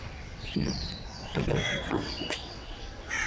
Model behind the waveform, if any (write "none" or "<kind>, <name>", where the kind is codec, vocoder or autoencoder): vocoder, WaveNeXt